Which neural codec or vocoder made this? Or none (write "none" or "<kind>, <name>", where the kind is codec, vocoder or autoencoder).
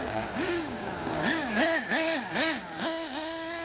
codec, DAC